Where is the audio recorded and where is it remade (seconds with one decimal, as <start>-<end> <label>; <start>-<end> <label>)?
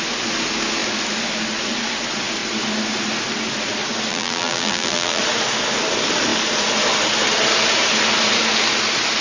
0.0-4.1 recorded; 4.1-5.2 remade; 5.2-9.2 recorded